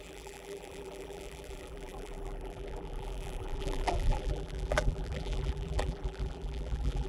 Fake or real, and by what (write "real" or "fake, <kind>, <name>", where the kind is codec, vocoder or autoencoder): fake, vocoder, BigVGAN v2